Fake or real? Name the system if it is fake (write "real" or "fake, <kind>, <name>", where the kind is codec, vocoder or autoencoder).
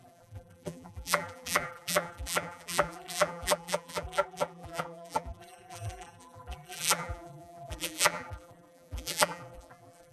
fake, vocoder, BigVGAN v2